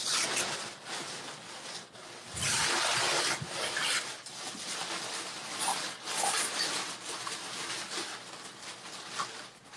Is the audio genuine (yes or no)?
yes